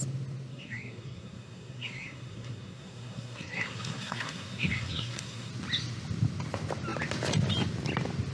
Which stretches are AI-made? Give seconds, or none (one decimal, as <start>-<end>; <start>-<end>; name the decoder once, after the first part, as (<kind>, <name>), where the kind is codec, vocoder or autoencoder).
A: 0.5-5.5 (codec, SNAC)